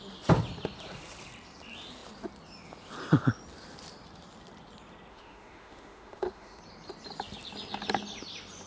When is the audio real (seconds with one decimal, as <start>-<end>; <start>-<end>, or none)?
0.0-5.1; 6.6-8.7